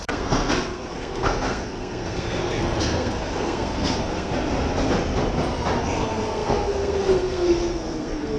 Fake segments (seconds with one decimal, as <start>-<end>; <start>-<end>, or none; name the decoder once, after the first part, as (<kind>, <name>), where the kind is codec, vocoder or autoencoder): 0.0-4.3 (codec, SNAC); 5.8-8.4